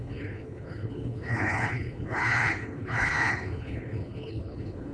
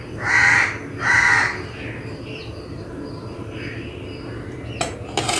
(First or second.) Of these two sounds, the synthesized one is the first